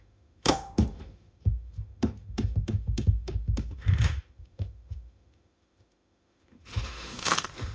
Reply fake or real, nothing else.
fake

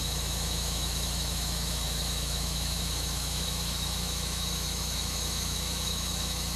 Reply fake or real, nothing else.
fake